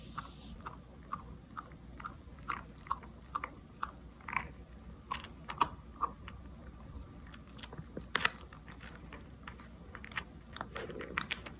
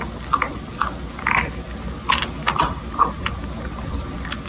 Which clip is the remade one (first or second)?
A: first